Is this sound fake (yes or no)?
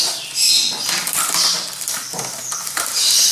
yes